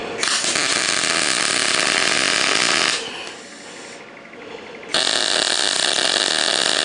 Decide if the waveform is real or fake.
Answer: real